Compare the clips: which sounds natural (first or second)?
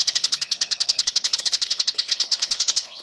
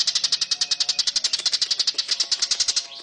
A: second